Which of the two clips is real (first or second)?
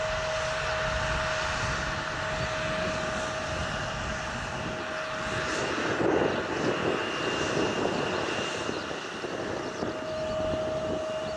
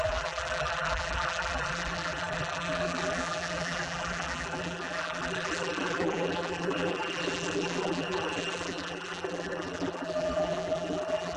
first